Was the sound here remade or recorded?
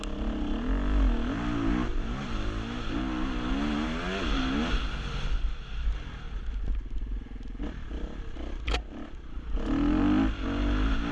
recorded